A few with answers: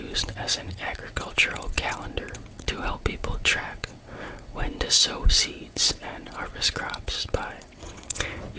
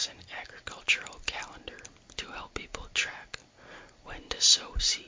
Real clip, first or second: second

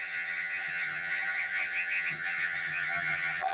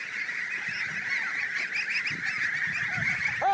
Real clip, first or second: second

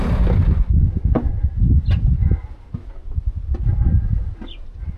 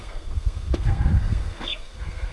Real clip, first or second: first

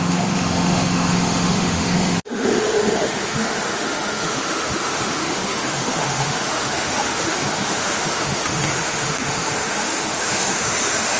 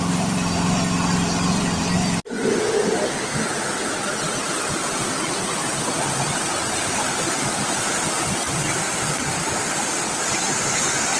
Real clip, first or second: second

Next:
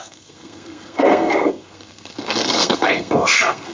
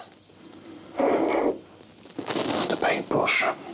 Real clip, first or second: second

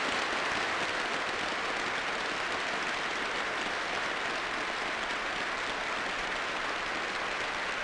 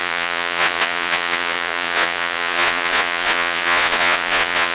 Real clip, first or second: first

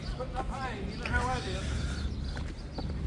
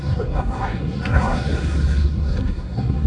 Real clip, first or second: first